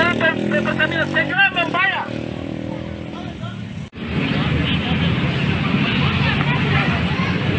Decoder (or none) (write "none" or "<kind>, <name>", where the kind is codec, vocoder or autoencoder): none